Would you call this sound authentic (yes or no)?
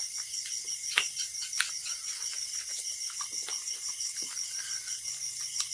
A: yes